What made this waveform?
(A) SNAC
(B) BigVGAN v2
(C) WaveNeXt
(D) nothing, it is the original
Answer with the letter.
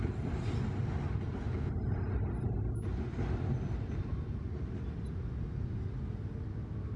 D